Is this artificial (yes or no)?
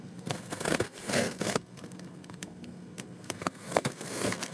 yes